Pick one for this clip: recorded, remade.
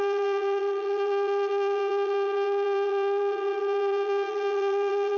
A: remade